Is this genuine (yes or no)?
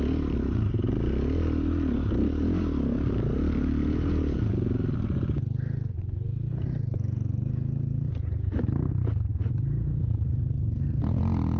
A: yes